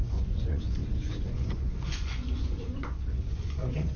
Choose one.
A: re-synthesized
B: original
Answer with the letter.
A